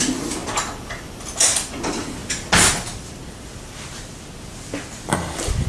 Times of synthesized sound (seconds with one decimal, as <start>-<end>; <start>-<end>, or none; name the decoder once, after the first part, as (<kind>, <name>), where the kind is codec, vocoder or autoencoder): none